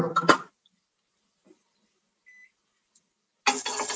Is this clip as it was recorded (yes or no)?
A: yes